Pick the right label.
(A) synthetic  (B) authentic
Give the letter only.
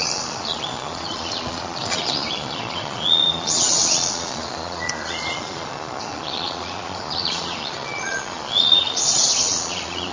A